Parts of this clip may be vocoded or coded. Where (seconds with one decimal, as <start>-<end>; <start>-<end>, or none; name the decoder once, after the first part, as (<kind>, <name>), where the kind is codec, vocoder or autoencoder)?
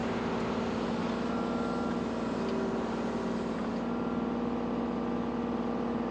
none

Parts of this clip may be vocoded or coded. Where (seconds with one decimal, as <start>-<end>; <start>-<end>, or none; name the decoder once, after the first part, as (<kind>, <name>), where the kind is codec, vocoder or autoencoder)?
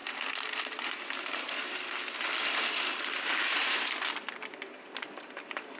none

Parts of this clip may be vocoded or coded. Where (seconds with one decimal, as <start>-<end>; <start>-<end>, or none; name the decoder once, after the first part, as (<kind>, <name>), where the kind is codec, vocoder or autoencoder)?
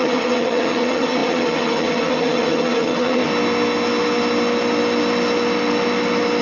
0.0-3.3 (vocoder, HiFi-GAN)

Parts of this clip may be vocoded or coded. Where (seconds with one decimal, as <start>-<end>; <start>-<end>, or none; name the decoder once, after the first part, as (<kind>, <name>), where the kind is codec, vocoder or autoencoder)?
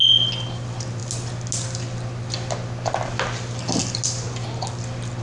none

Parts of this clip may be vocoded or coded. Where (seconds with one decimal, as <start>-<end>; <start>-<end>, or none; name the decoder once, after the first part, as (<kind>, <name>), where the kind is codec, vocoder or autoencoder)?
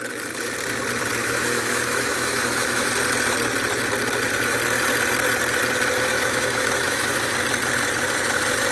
1.2-2.9 (autoencoder, DAC-VAE); 6.1-7.3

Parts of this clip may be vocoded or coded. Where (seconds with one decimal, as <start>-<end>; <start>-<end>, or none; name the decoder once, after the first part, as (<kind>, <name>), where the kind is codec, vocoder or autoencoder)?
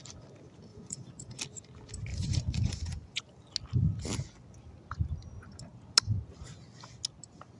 0.7-1.4 (vocoder, Vocos); 2.1-3.2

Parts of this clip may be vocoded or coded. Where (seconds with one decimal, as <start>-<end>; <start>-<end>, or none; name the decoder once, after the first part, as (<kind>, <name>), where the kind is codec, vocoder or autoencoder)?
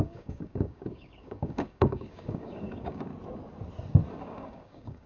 0.0-3.1 (codec, DAC); 4.1-5.1